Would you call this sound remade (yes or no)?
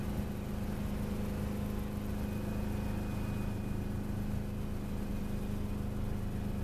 no